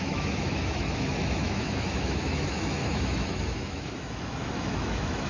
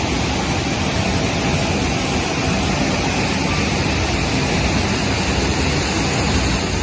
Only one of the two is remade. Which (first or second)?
first